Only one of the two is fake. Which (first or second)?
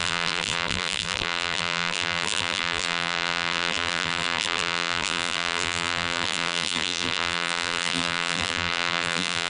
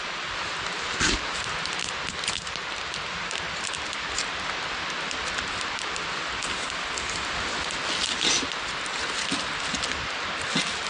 first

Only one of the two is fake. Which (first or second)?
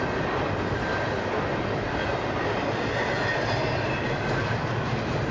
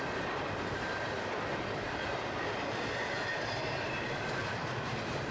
second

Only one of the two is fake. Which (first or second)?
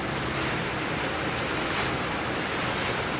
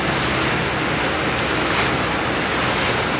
first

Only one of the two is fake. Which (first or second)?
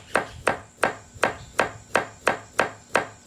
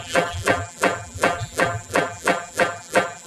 second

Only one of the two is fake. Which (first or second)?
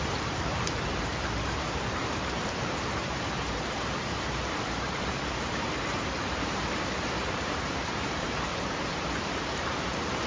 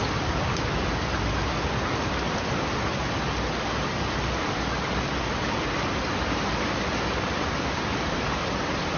first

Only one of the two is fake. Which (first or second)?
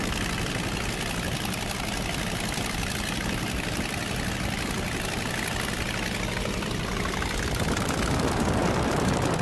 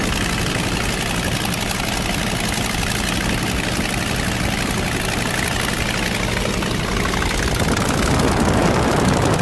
first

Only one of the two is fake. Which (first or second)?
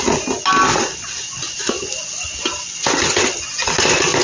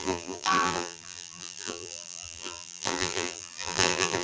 second